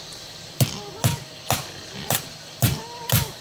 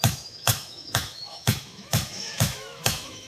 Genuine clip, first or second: first